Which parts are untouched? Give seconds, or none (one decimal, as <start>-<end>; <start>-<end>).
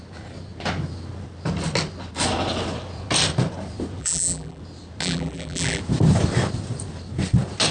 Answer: 0.0-4.0; 4.6-5.0; 5.8-7.7